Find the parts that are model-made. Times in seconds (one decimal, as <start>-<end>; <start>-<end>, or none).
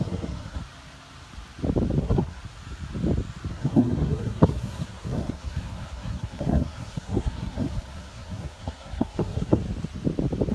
0.0-0.6; 2.0-2.4; 3.5-9.6